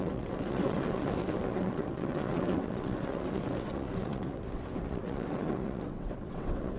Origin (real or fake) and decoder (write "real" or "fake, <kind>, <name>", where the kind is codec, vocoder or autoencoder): fake, vocoder, WaveNeXt